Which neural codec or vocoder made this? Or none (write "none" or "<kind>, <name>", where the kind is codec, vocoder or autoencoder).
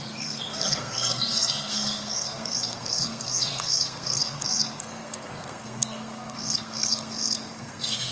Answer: codec, SNAC